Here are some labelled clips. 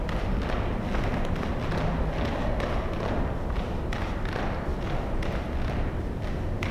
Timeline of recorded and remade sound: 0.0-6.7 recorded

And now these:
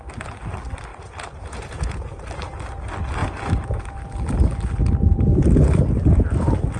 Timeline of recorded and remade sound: 0.0-0.9 recorded; 0.9-2.0 remade; 2.0-6.8 recorded